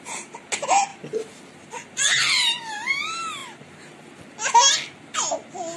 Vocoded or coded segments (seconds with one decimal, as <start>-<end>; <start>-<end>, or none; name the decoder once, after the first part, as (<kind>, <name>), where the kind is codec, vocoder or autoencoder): none